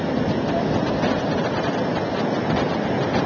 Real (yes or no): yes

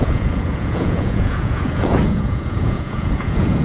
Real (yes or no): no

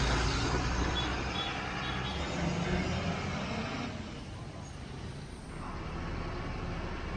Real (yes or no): yes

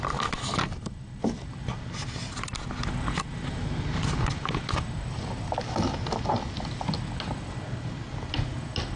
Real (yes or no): yes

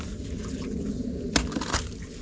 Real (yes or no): yes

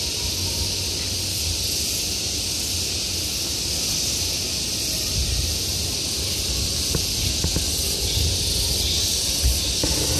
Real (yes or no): yes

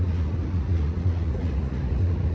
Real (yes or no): no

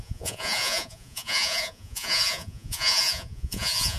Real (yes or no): no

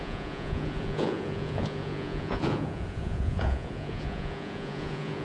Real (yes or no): no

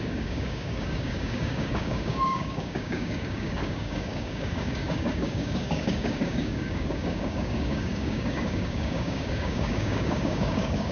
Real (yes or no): no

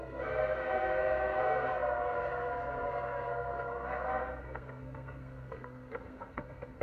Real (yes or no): no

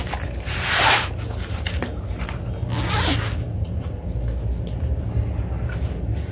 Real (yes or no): yes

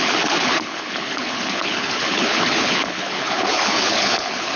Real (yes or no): no